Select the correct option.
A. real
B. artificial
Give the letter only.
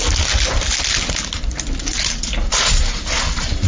A